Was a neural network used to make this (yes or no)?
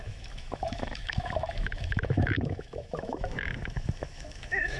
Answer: yes